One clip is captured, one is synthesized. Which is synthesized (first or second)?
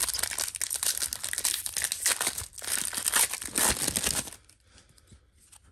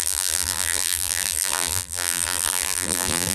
second